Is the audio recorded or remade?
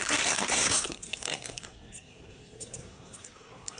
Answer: remade